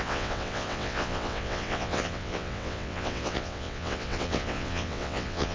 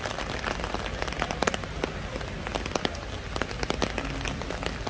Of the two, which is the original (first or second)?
second